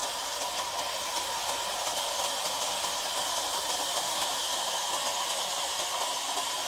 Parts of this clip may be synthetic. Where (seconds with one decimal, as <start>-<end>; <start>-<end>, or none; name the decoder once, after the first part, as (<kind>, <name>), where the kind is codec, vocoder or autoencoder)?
4.0-6.7 (vocoder, BigVGAN v2)